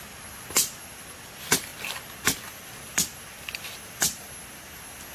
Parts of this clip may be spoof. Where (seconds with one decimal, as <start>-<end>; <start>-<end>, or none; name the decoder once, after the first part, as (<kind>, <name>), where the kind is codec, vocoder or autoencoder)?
none